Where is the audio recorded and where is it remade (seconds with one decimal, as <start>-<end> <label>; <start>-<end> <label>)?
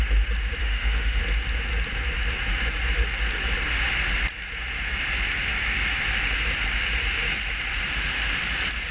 0.0-0.6 recorded; 0.6-1.2 remade; 1.2-8.9 recorded